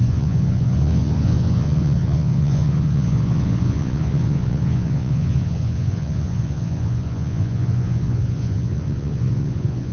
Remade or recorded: remade